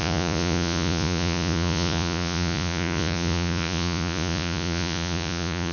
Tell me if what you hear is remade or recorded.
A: remade